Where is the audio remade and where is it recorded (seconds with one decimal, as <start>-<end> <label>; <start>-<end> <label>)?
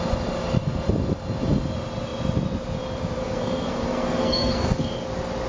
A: 0.0-3.2 recorded; 3.2-5.1 remade; 5.1-5.5 recorded